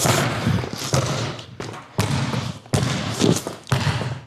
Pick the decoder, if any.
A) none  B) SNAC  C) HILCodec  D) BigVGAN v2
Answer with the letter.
A